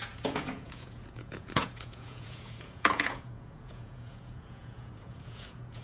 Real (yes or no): no